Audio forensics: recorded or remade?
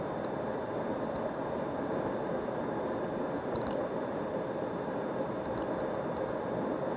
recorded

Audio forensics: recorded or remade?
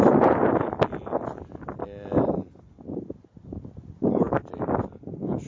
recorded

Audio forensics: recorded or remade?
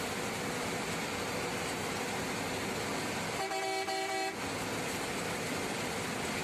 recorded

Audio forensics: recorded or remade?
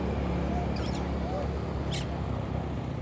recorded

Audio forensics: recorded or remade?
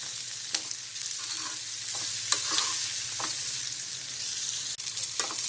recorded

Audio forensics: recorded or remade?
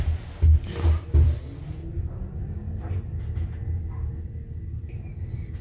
recorded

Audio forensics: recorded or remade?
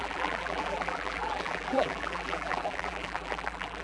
remade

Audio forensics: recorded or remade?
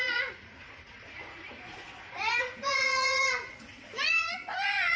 remade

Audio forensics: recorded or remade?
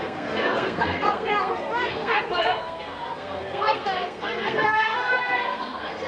remade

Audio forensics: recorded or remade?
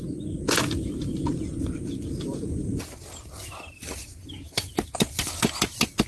recorded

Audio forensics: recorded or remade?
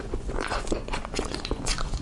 remade